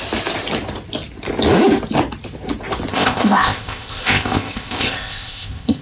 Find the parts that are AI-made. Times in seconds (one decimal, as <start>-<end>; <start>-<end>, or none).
2.9-5.8